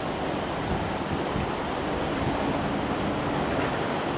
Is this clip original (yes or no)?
yes